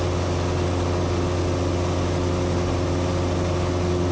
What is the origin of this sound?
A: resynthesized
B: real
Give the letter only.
B